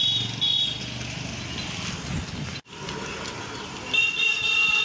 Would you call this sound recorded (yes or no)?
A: yes